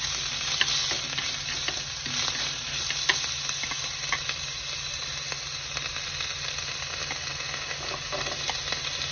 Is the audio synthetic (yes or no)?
no